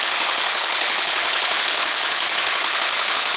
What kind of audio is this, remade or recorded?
remade